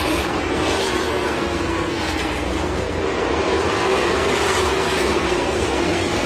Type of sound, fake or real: fake